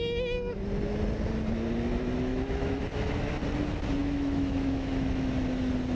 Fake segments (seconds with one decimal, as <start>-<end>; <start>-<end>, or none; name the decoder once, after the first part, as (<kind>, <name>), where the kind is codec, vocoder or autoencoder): 2.3-2.8 (autoencoder, DAC-VAE); 4.0-5.3